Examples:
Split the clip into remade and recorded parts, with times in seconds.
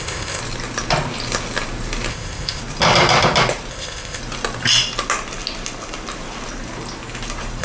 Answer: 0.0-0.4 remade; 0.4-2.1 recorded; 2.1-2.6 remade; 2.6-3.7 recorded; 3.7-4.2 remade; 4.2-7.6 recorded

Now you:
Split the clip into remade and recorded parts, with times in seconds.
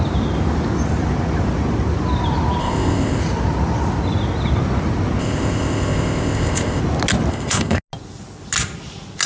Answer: 0.0-2.6 recorded; 2.6-3.2 remade; 3.2-5.2 recorded; 5.2-6.8 remade; 6.8-7.3 recorded; 7.3-7.8 remade; 7.8-9.3 recorded